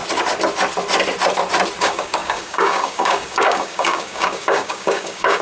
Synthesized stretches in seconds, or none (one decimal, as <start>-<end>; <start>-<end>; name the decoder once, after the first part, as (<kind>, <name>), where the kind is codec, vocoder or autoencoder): 1.8-5.4 (codec, DAC)